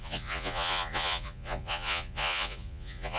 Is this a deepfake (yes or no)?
yes